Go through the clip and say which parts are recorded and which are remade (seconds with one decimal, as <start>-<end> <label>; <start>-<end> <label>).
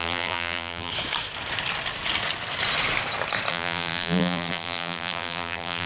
0.0-0.9 remade; 0.9-3.5 recorded; 3.5-5.9 remade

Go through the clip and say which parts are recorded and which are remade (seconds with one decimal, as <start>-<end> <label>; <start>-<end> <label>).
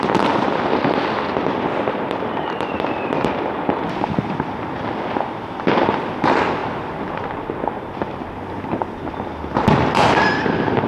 0.0-10.9 remade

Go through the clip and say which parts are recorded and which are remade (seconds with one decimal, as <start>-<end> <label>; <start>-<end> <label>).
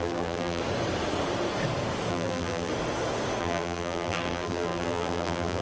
0.0-0.6 remade; 0.6-2.1 recorded; 2.1-2.7 remade; 2.7-3.4 recorded; 3.4-5.6 remade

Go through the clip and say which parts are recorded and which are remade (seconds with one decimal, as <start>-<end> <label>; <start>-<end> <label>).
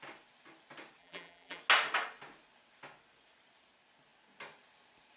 0.0-1.0 recorded; 1.0-1.6 remade; 1.6-5.2 recorded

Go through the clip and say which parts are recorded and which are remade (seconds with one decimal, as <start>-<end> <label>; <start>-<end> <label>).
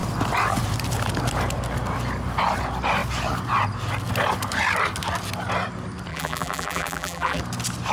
0.0-6.1 recorded; 6.1-7.4 remade; 7.4-7.9 recorded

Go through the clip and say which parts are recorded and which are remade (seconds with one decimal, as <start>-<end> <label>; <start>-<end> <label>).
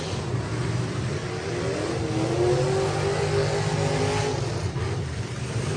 0.0-1.2 remade; 1.2-4.7 recorded; 4.7-5.8 remade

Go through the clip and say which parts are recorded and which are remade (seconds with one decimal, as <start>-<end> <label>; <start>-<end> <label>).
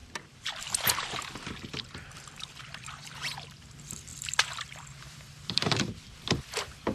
0.0-6.9 remade